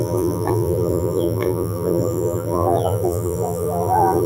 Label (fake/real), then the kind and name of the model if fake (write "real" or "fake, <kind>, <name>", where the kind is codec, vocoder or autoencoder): fake, vocoder, BigVGAN v2